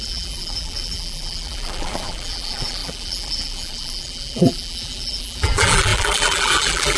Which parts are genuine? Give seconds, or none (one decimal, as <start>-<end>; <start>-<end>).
none